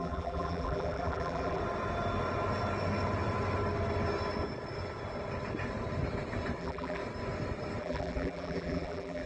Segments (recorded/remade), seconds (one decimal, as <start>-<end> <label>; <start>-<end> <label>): 0.0-1.6 remade; 1.6-6.6 recorded; 6.6-7.0 remade; 7.0-7.8 recorded; 7.8-9.3 remade

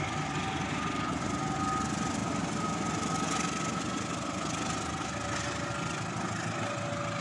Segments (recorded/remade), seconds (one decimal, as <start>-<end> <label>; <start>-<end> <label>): 0.0-7.2 recorded

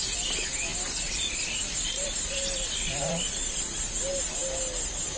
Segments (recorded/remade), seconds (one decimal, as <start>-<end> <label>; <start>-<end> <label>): 0.0-0.7 recorded; 0.7-3.8 remade; 3.8-5.2 recorded